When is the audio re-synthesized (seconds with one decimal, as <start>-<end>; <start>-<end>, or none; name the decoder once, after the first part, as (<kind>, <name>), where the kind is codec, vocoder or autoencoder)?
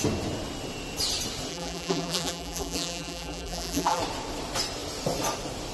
1.5-4.0 (vocoder, BigVGAN v2)